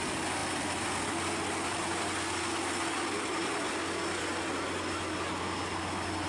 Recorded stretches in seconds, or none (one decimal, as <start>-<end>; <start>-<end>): 0.0-6.3